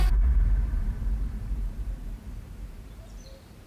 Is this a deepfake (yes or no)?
yes